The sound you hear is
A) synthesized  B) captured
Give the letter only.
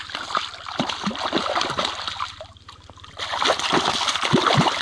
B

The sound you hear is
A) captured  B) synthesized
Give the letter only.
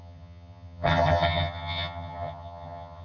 B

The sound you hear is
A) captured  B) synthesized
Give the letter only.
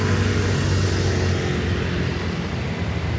A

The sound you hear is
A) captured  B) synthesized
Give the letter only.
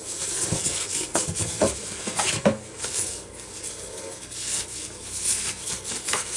B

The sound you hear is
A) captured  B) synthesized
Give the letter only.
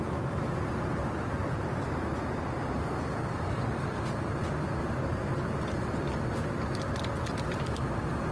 A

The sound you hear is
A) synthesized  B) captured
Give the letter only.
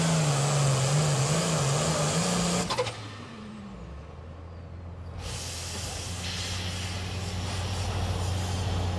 B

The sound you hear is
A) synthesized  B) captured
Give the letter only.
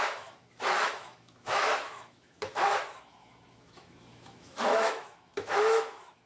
A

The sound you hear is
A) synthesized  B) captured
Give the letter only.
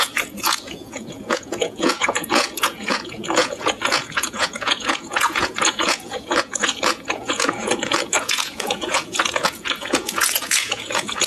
A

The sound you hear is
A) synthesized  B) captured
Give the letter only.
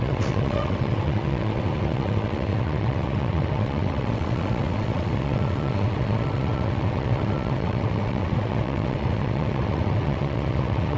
A